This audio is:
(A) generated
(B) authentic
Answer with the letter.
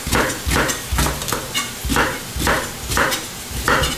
B